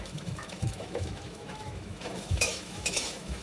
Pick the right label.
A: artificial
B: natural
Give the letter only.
A